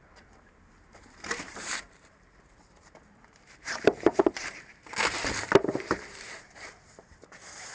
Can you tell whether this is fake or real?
fake